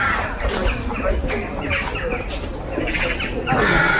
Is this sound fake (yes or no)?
no